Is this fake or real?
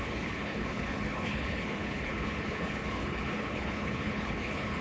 fake